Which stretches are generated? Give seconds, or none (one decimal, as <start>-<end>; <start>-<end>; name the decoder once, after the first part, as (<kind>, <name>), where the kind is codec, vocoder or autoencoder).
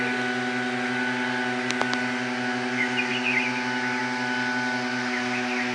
none